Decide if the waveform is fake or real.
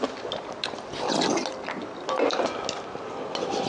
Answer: real